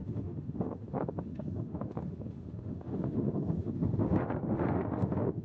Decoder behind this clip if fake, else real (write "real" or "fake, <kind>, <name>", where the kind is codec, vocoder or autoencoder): fake, autoencoder, DAC-VAE